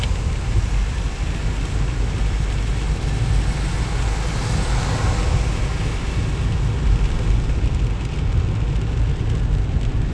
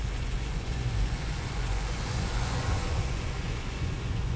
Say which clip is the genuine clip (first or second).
first